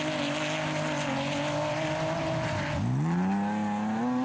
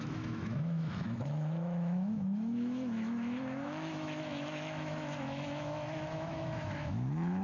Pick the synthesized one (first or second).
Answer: second